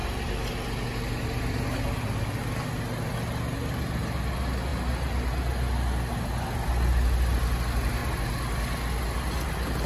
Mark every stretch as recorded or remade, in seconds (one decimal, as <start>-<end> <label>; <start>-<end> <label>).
0.0-0.8 remade; 0.8-9.9 recorded